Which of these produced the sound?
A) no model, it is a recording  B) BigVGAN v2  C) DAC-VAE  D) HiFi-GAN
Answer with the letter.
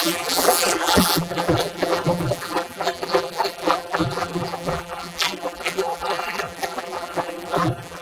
B